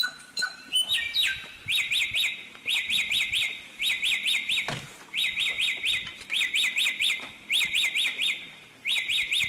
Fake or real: fake